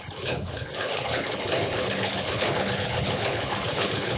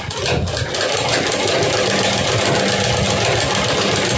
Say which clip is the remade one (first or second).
first